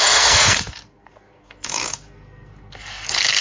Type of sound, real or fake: fake